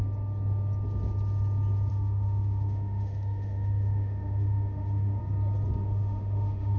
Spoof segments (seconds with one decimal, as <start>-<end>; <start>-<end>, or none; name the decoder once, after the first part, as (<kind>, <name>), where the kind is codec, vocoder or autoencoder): 1.9-5.2 (autoencoder, DAC-VAE); 5.8-6.8